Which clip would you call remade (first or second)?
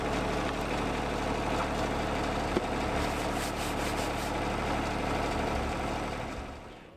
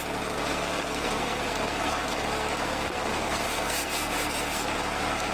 second